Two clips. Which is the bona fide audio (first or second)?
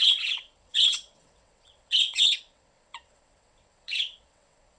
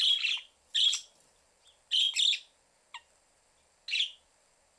second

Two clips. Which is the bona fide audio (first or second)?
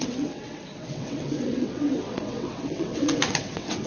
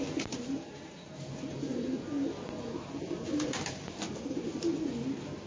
second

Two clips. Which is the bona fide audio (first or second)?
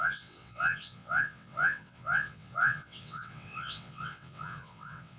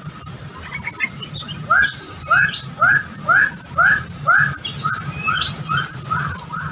second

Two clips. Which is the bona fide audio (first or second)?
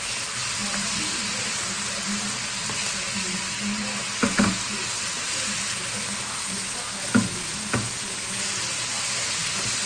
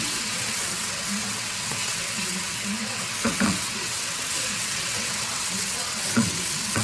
first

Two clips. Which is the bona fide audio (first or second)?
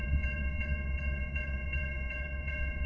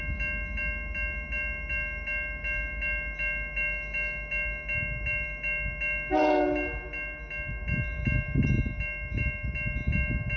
second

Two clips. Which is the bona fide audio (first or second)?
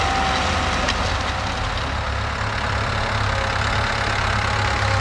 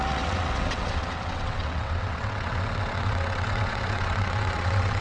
first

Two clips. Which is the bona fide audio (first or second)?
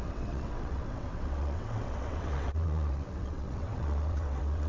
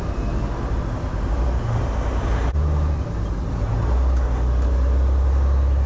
second